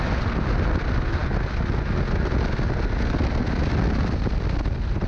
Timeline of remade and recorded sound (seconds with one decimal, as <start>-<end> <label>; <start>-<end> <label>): 0.0-1.2 remade; 1.2-4.3 recorded; 4.3-5.1 remade